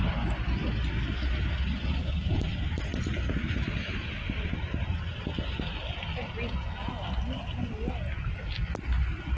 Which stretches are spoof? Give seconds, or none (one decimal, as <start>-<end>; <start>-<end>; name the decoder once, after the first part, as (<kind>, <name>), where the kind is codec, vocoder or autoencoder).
none